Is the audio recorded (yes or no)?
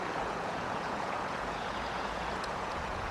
no